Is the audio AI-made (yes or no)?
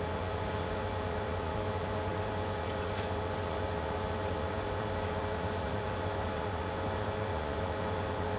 yes